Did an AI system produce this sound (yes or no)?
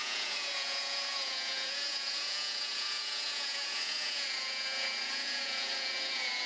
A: yes